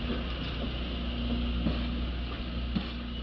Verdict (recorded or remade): recorded